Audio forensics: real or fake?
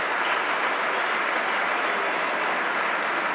real